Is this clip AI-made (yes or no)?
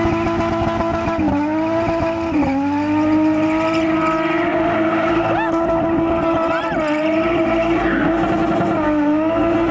no